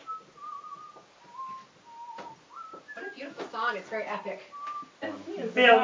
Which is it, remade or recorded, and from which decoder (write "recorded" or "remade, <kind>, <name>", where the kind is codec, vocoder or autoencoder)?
recorded